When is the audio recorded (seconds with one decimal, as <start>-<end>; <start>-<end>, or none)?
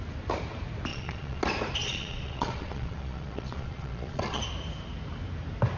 0.0-0.9; 1.4-1.8; 4.4-5.8